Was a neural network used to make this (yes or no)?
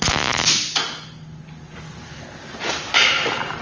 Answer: no